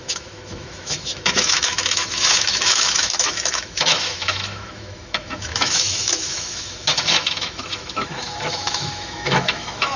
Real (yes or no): no